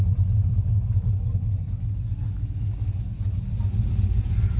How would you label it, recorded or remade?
recorded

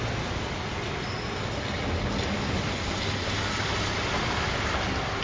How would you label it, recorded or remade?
recorded